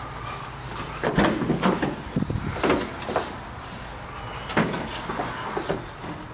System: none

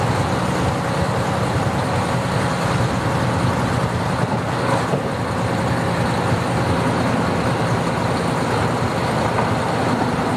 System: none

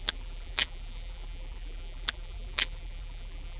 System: vocoder, BigVGAN v2